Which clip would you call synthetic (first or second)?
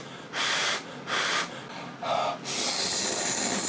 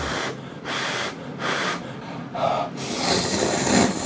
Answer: second